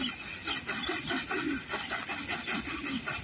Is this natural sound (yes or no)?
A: yes